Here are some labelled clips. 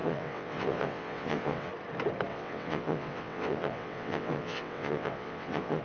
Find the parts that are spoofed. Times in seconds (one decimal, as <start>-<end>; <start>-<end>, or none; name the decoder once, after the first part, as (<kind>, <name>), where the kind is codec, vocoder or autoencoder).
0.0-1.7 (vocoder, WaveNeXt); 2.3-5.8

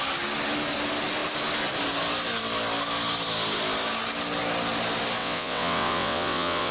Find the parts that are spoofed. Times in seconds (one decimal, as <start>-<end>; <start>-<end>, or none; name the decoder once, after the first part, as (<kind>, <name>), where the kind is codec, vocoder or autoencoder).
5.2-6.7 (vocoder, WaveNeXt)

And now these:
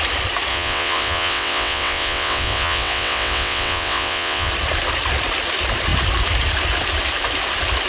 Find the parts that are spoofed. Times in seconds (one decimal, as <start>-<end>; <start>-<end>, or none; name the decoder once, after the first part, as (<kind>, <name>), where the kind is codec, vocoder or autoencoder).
0.5-4.5 (vocoder, WaveNeXt)